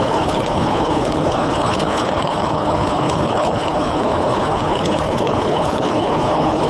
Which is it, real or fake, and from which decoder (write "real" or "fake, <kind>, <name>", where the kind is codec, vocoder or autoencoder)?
fake, codec, HILCodec